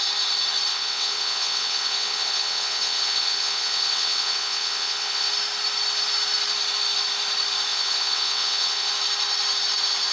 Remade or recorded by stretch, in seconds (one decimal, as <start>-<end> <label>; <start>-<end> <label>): 0.0-0.7 recorded; 0.7-5.3 remade; 5.3-7.7 recorded; 7.7-8.9 remade; 8.9-10.1 recorded